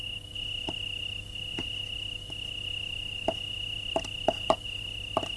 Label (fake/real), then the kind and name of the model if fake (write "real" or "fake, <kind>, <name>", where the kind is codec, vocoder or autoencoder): real